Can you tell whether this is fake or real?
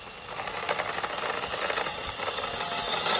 real